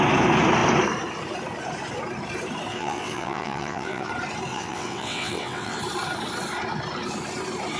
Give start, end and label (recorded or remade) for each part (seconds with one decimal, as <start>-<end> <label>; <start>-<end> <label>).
0.0-2.7 recorded; 2.7-4.1 remade; 4.1-4.5 recorded; 4.5-5.8 remade; 5.8-7.8 recorded